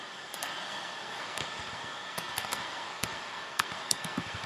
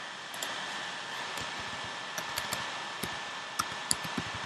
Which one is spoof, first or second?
first